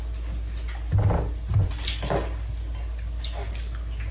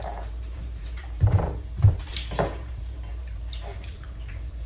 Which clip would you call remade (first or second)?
second